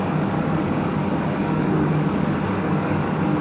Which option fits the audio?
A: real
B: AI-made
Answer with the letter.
B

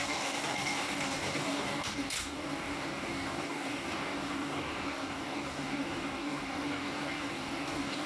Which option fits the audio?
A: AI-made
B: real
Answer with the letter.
A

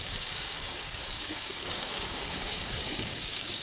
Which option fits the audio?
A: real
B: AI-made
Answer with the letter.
B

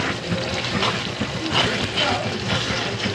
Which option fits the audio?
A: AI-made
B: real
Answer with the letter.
B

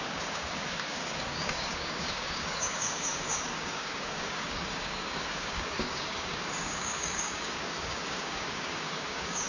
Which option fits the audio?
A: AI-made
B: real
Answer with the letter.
A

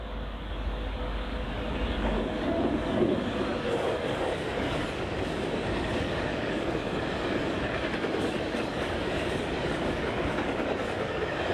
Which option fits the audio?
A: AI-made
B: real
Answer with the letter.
A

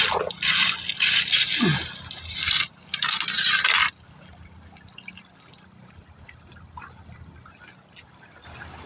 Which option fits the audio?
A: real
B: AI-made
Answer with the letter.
A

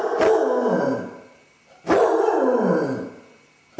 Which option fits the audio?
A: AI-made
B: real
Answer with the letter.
B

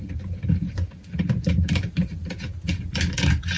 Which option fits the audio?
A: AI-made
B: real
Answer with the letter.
B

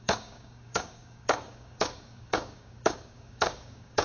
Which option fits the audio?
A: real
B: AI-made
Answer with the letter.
B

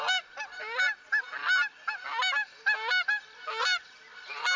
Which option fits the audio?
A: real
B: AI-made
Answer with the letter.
A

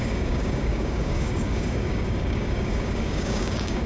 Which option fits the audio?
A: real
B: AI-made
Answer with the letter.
B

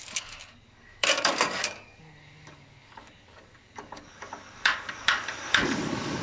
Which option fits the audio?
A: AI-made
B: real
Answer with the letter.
A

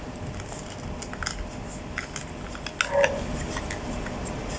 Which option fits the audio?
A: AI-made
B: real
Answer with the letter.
B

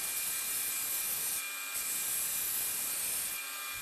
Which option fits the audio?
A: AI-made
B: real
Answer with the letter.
B